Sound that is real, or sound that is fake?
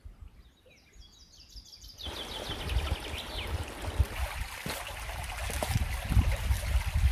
real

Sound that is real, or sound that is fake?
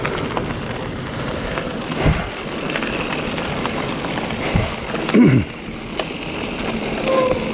real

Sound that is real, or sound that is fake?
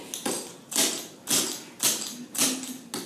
real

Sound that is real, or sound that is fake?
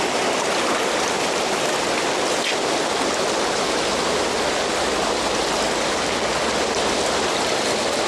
real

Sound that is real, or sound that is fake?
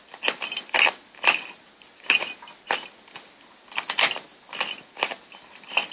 real